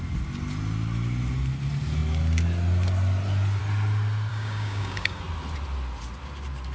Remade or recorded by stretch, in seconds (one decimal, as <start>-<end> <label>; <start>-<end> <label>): 0.0-4.3 recorded; 4.3-5.2 remade; 5.2-6.7 recorded